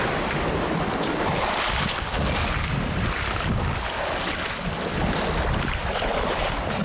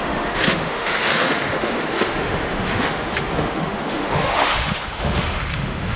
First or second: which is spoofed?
second